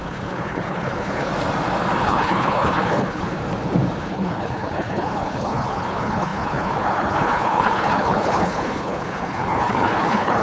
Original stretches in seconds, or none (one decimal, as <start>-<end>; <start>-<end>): 1.3-2.0; 3.4-4.0